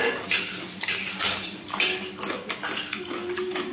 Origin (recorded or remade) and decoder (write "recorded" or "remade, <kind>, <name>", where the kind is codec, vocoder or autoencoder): recorded